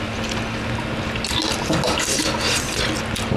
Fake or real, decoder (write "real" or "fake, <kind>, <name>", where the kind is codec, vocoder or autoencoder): real